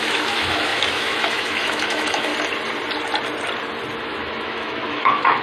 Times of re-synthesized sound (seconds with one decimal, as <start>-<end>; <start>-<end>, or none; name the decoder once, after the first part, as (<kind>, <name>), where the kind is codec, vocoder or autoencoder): 0.0-2.3 (autoencoder, DAC-VAE); 4.0-5.4